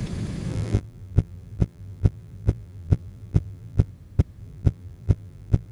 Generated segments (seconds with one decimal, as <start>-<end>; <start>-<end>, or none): 0.5-3.9; 4.4-5.7